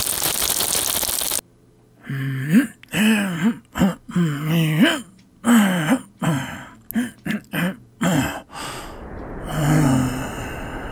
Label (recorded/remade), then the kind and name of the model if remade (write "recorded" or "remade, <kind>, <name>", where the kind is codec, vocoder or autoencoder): recorded